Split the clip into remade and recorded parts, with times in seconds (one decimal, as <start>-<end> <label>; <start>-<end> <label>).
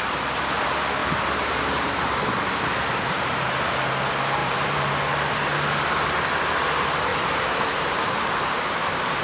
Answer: 0.0-1.0 recorded; 1.0-3.5 remade; 3.5-4.4 recorded; 4.4-4.9 remade; 4.9-7.1 recorded; 7.1-9.2 remade